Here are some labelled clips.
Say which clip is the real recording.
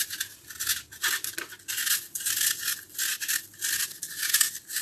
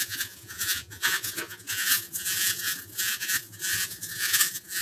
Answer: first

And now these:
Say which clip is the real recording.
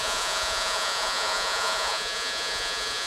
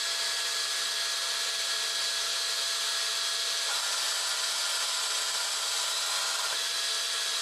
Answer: second